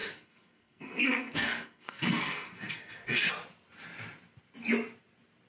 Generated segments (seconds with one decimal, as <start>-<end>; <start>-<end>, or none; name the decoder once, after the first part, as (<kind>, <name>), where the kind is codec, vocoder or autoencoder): 0.0-3.3 (codec, SNAC)